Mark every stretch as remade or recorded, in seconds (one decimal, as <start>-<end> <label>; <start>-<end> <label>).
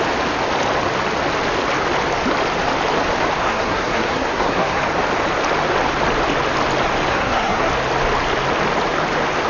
0.0-3.4 recorded; 3.4-4.8 remade; 4.8-7.1 recorded; 7.1-7.7 remade; 7.7-9.5 recorded